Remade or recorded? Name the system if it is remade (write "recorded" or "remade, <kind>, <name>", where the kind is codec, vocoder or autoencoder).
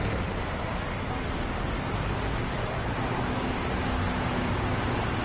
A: recorded